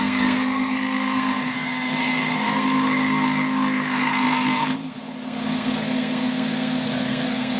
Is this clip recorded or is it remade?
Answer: remade